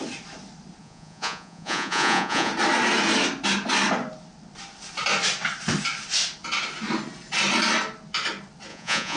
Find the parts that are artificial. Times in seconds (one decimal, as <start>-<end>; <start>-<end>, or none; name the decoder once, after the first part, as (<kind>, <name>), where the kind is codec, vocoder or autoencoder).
0.8-2.5 (vocoder, Vocos); 8.7-9.2